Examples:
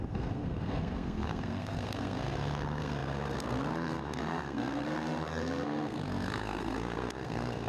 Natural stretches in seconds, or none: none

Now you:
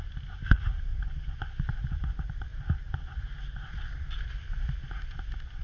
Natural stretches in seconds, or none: 0.0-0.9; 1.7-5.6

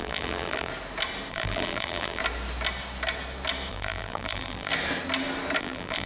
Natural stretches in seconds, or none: 0.7-1.3; 2.2-3.7; 4.7-5.6

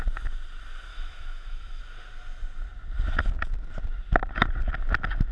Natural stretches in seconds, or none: 0.0-0.9; 1.8-5.3

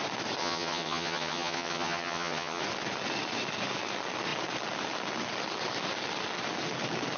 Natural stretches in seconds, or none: 0.0-0.4; 2.6-7.2